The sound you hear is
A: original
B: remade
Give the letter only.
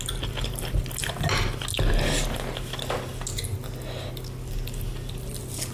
A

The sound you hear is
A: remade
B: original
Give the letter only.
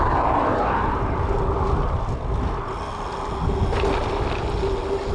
B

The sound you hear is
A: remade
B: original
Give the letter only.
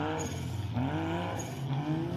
B